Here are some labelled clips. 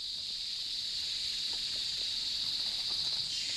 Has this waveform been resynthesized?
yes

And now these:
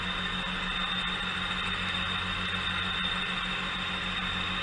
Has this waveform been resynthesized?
no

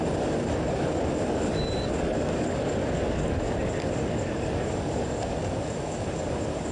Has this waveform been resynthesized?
yes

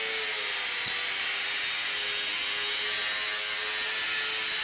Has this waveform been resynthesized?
no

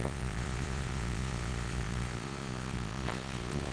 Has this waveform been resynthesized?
yes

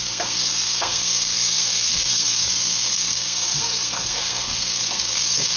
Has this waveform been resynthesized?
yes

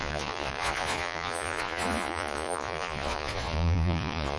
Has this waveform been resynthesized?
yes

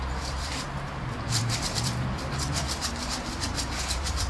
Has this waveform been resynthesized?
yes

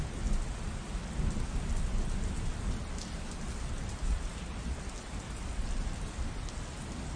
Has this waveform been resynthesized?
no